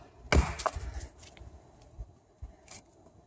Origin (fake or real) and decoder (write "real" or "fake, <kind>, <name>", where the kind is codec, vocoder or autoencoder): real